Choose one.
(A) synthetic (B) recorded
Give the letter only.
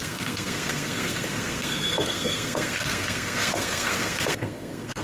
A